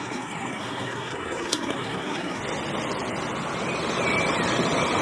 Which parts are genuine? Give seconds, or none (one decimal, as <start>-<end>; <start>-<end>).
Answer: 2.4-5.0